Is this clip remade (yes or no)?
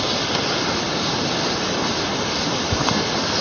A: no